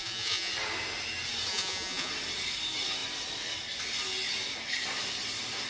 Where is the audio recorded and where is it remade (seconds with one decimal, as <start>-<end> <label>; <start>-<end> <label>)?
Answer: 0.0-0.5 remade; 0.5-1.5 recorded; 1.5-2.1 remade; 2.1-5.7 recorded